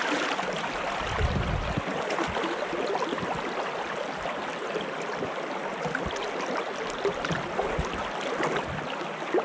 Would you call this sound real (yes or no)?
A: yes